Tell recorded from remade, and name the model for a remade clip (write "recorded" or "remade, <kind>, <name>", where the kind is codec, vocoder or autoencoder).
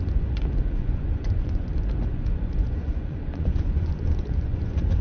remade, vocoder, Vocos